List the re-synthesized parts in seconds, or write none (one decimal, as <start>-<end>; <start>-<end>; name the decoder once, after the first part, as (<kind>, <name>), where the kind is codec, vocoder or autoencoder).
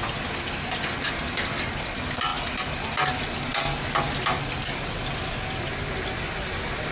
none